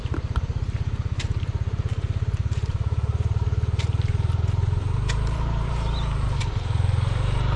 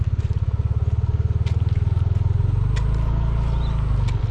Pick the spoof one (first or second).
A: first